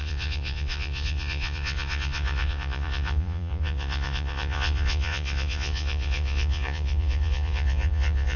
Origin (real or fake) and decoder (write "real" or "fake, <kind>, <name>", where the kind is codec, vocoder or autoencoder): fake, vocoder, Vocos